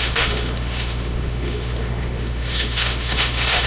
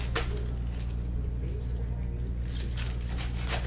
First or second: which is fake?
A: first